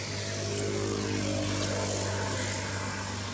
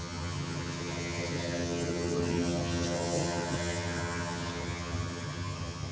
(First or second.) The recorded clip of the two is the first